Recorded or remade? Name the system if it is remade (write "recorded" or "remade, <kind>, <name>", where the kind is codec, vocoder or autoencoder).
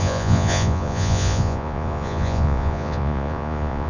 remade, vocoder, Vocos